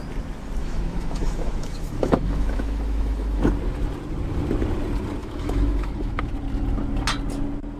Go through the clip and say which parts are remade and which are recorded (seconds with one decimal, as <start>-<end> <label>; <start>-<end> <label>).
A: 0.0-0.6 recorded; 0.6-3.4 remade; 3.4-5.2 recorded; 5.2-6.3 remade; 6.3-7.8 recorded